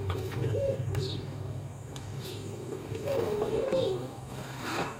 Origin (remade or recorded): remade